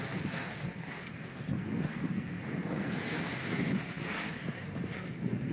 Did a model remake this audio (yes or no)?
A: yes